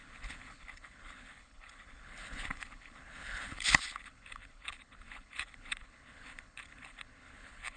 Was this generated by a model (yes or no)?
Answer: yes